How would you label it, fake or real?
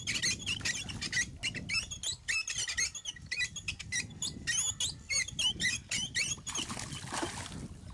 real